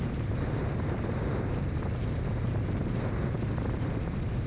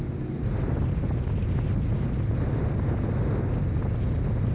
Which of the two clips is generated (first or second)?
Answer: first